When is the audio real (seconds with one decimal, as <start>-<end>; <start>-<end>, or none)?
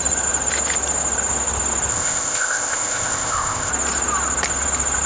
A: 0.0-1.9; 3.7-5.1